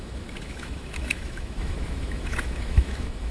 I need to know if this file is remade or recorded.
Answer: remade